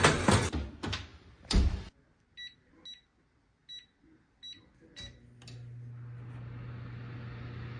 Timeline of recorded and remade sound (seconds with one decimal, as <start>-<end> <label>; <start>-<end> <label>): 0.0-7.8 recorded